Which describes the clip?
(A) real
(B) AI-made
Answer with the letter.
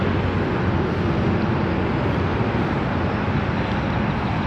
A